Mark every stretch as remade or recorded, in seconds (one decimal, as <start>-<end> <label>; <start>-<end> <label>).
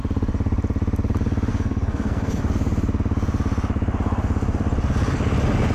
0.0-1.5 recorded; 1.5-2.4 remade; 2.4-5.7 recorded